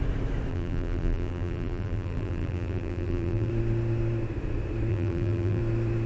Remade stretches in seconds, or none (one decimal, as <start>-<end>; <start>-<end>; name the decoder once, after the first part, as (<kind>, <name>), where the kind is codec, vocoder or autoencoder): 0.5-3.5 (vocoder, BigVGAN v2); 4.9-5.6